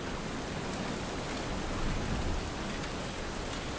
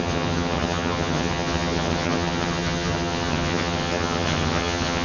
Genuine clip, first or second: first